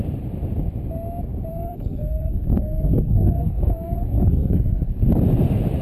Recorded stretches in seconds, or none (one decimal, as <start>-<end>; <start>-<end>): 0.0-1.5; 5.0-5.8